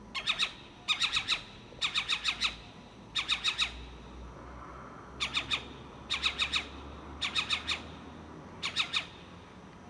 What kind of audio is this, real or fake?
real